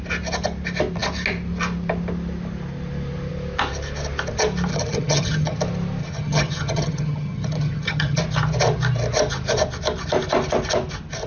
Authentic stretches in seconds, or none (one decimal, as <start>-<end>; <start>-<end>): 0.0-4.7; 5.6-6.0; 8.2-11.3